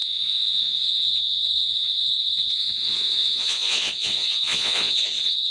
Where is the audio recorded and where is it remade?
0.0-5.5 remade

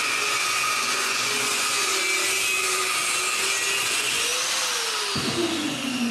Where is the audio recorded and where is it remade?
0.0-1.9 remade; 1.9-2.6 recorded; 2.6-3.0 remade; 3.0-3.8 recorded; 3.8-4.3 remade; 4.3-5.3 recorded; 5.3-6.1 remade

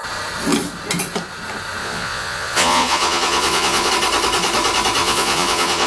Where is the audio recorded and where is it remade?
0.0-1.8 recorded; 1.8-3.9 remade; 3.9-5.0 recorded; 5.0-5.9 remade

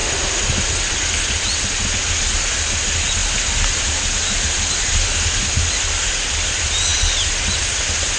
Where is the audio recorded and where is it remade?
0.0-8.2 recorded

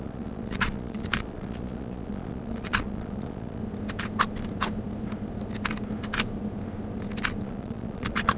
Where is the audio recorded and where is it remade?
0.0-3.6 remade; 3.6-7.4 recorded; 7.4-8.4 remade

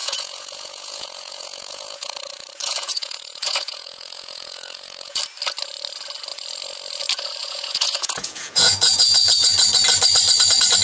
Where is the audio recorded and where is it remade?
0.0-2.1 remade; 2.1-2.6 recorded; 2.6-5.2 remade; 5.2-7.4 recorded; 7.4-9.5 remade; 9.5-10.8 recorded

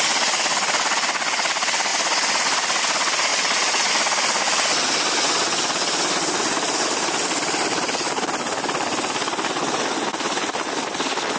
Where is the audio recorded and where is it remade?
0.0-3.3 recorded; 3.3-3.9 remade; 3.9-11.4 recorded

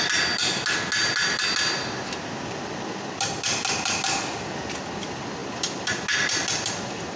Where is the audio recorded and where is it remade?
0.0-7.2 recorded